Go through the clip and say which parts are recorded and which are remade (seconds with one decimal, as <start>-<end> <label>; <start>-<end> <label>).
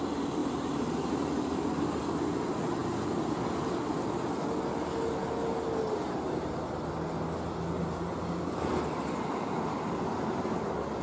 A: 0.0-0.4 recorded; 0.4-2.0 remade; 2.0-11.0 recorded